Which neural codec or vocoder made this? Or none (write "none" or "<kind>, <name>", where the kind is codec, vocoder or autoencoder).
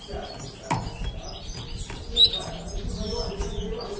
none